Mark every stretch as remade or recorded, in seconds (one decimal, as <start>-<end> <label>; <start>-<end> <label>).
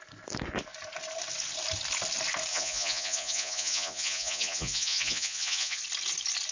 0.0-2.5 recorded; 2.5-5.8 remade; 5.8-6.5 recorded